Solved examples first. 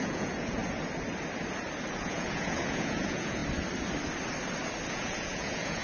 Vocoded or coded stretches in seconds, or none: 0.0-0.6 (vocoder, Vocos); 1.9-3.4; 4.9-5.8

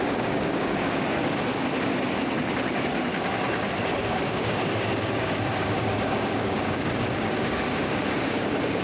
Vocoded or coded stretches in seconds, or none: 0.0-1.5 (codec, DAC); 4.0-8.8

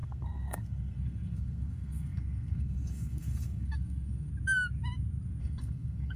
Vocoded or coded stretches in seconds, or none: 0.0-4.3 (codec, SNAC); 5.4-6.2

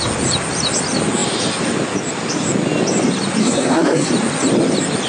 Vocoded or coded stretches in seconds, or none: 3.4-4.1 (codec, SNAC)

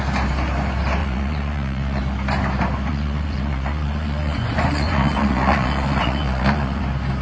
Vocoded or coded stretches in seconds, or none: 1.0-2.0 (vocoder, Vocos); 2.9-6.8

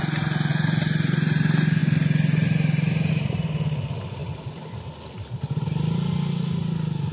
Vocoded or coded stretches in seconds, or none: none